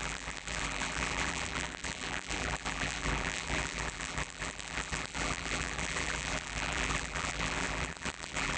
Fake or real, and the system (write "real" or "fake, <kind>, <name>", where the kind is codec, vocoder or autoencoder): fake, vocoder, BigVGAN v2